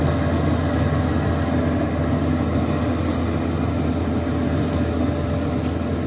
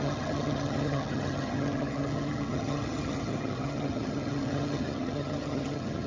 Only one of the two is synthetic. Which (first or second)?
second